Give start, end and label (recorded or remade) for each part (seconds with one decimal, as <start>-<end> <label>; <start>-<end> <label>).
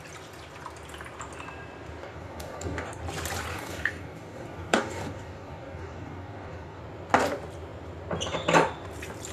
0.0-2.0 recorded; 2.0-3.0 remade; 3.0-3.5 recorded; 3.5-6.8 remade; 6.8-9.3 recorded